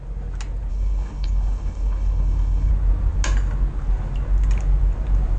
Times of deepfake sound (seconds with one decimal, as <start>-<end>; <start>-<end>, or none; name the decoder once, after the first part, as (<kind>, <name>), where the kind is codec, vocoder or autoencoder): 0.7-2.7 (codec, HILCodec)